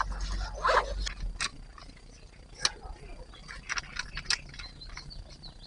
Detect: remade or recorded recorded